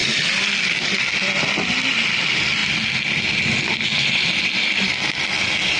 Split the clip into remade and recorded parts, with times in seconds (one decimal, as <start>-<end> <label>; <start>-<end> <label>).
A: 0.0-5.8 recorded